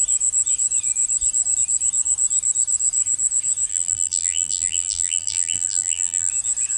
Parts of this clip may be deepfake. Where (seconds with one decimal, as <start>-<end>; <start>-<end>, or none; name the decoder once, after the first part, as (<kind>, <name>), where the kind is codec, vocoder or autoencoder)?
3.7-6.3 (vocoder, BigVGAN v2)